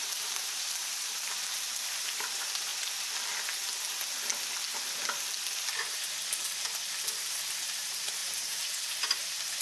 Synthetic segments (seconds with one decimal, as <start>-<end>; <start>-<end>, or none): 0.0-2.7; 7.1-9.6